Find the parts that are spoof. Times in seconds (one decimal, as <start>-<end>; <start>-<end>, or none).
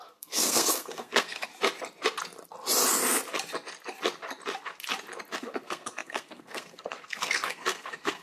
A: 0.0-1.5; 5.4-8.2